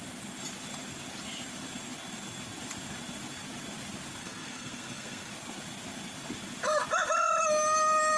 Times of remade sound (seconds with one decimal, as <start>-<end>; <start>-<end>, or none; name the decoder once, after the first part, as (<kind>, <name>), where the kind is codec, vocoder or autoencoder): 4.2-5.3 (codec, SNAC)